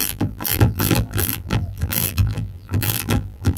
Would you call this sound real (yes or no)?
no